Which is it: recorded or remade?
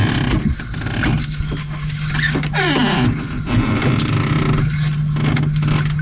recorded